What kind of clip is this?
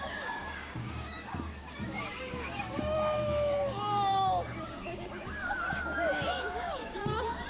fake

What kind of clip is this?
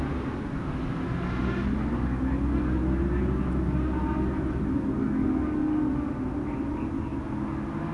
real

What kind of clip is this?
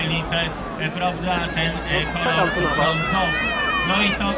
real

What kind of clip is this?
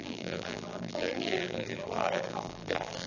fake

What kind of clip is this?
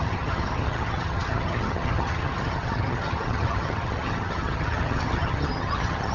fake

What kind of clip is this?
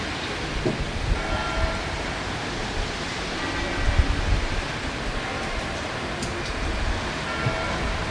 real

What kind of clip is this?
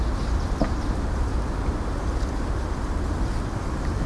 real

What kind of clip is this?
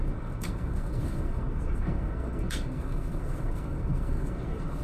fake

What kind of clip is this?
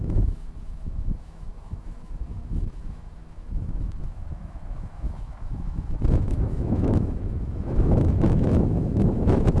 fake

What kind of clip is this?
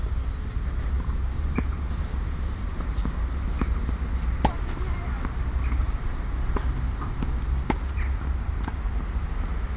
real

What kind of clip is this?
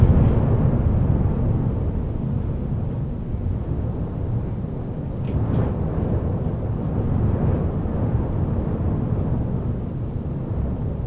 real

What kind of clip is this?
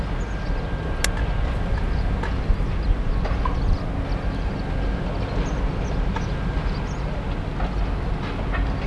real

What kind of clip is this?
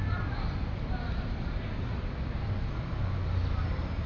real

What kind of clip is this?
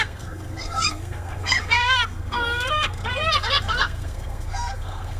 fake